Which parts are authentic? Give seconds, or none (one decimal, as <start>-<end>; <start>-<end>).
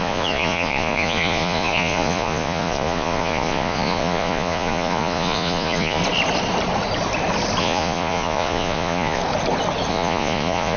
6.0-7.6; 9.2-9.9